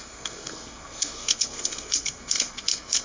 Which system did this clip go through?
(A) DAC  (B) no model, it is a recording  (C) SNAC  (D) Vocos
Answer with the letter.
C